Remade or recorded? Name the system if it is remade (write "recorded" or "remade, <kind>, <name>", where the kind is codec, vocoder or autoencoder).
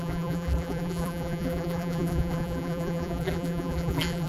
remade, vocoder, BigVGAN v2